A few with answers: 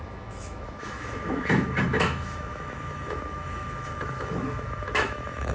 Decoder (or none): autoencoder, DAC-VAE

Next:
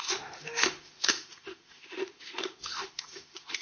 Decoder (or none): autoencoder, DAC-VAE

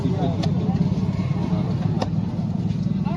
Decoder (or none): none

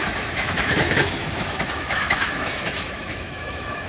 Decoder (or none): autoencoder, DAC-VAE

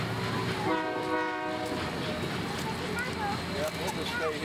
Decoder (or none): none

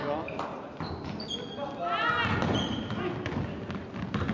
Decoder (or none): none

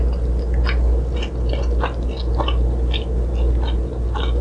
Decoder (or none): none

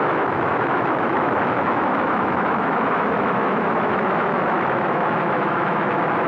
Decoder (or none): autoencoder, DAC-VAE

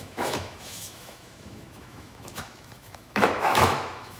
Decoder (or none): autoencoder, DAC-VAE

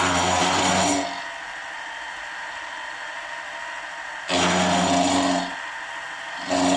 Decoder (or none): none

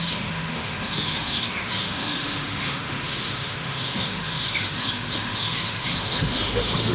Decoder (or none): autoencoder, DAC-VAE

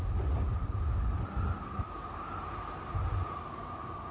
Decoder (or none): none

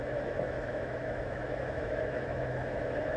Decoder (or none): autoencoder, DAC-VAE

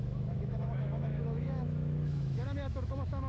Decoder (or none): autoencoder, DAC-VAE